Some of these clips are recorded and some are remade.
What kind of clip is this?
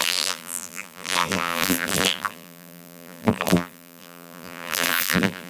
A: remade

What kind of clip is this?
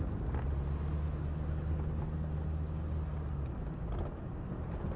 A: recorded